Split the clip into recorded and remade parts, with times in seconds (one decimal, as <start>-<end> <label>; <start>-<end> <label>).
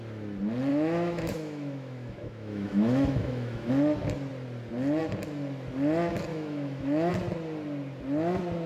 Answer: 0.0-0.7 recorded; 0.7-3.7 remade; 3.7-6.3 recorded; 6.3-7.1 remade; 7.1-8.7 recorded